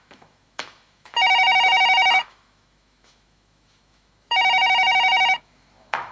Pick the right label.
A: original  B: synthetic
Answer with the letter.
B